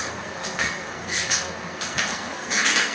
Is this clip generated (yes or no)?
yes